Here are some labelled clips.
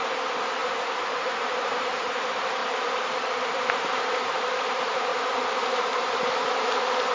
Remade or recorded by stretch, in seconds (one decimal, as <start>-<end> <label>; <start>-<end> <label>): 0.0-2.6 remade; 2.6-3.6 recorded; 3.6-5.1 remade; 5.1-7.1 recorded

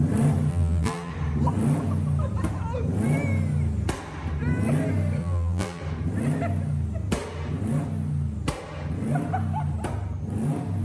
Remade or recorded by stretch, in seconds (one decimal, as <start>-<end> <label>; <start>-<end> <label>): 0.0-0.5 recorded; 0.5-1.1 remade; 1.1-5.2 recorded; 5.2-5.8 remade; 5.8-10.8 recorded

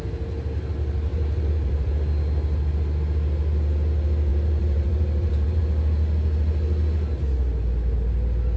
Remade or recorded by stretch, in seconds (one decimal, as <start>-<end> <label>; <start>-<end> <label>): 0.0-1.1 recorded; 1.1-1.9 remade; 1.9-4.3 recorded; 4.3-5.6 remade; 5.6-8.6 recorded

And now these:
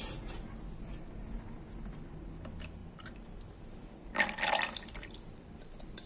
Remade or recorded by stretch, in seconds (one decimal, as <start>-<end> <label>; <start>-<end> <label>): 0.0-2.8 recorded; 2.8-6.1 remade

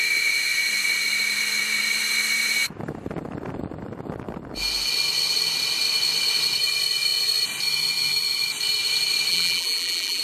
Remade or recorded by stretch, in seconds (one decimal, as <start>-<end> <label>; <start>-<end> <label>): 0.0-9.3 recorded; 9.3-10.2 remade

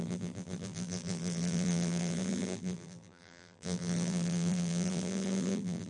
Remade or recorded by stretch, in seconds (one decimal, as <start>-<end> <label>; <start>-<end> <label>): 0.0-5.9 remade